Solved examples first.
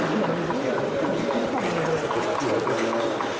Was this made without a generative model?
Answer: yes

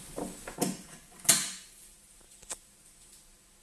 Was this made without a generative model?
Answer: yes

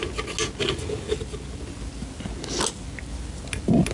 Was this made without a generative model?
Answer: yes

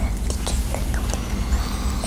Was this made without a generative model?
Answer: yes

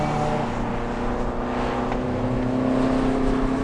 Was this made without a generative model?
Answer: yes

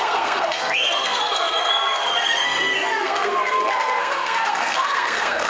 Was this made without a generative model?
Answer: no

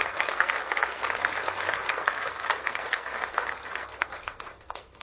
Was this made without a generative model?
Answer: no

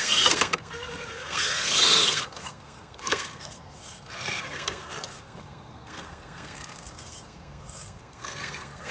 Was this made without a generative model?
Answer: no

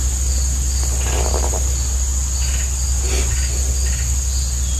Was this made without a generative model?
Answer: yes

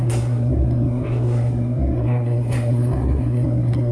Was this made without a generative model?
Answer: no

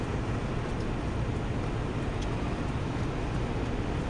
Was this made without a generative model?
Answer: yes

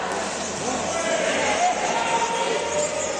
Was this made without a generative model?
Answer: yes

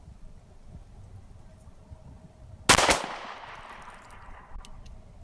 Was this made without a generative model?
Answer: yes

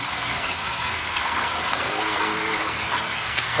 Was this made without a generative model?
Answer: no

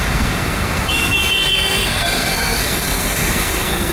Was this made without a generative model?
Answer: no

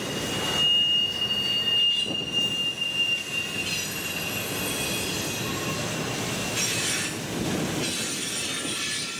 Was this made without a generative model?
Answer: yes